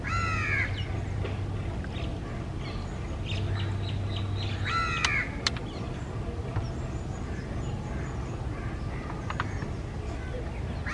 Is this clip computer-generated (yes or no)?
no